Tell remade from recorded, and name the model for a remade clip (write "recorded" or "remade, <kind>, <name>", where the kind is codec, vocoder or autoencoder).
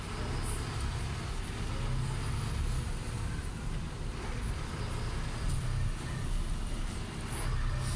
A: recorded